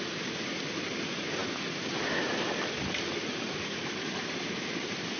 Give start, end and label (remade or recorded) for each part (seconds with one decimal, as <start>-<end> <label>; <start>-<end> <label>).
0.0-5.2 recorded